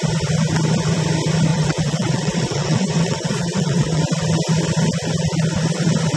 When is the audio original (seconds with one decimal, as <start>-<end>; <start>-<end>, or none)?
0.0-1.5; 4.0-6.2